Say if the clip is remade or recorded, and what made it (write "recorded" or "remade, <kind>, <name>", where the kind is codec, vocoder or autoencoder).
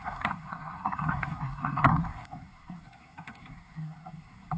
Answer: remade, codec, SNAC